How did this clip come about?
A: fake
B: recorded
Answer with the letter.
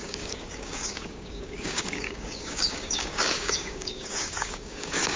A